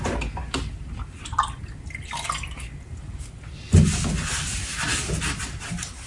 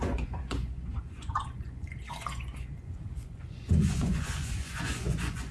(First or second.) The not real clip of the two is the second